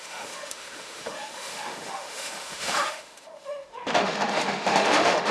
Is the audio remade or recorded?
remade